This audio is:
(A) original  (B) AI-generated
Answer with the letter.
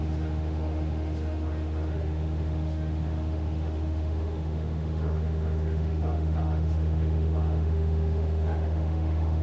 B